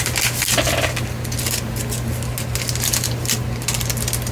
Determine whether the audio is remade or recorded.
recorded